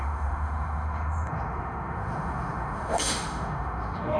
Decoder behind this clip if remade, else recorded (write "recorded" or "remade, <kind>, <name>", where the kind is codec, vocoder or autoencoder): remade, autoencoder, DAC-VAE